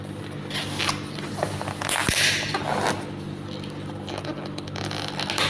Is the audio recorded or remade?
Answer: recorded